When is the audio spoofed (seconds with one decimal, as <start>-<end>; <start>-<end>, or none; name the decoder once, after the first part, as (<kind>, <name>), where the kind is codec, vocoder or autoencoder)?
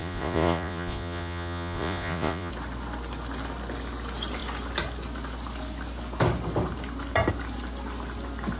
0.0-2.5 (vocoder, Vocos)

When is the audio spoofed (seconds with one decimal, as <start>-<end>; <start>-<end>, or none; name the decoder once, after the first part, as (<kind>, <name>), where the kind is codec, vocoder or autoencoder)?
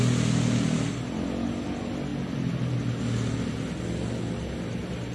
none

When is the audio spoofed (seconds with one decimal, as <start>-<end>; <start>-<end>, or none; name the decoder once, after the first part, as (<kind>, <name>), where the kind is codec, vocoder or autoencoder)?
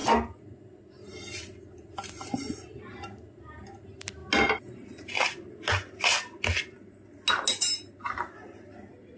none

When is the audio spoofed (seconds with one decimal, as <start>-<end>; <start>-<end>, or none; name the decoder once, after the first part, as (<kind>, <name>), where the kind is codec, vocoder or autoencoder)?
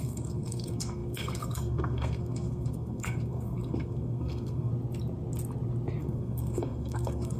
0.0-4.7 (codec, SNAC); 6.0-7.4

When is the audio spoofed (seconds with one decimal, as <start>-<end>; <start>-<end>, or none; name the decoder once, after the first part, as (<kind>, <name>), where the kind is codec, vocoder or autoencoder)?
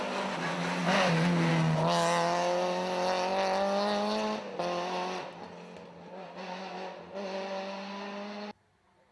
none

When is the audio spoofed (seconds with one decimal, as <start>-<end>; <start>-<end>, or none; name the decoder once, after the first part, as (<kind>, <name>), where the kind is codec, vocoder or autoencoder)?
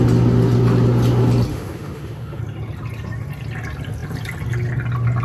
1.5-2.4 (autoencoder, DAC-VAE)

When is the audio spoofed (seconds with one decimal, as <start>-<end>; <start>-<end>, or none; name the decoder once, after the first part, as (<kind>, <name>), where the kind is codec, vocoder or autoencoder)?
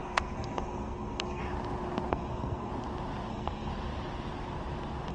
0.0-1.4 (codec, SNAC); 2.1-2.7; 3.3-3.7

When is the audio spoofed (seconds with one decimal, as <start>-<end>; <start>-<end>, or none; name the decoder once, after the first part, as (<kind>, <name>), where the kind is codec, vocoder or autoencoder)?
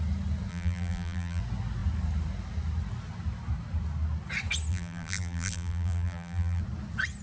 0.5-1.4 (vocoder, BigVGAN v2); 4.7-6.6